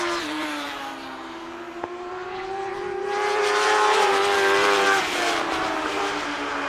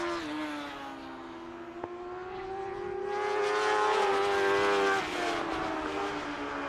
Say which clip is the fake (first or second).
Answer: first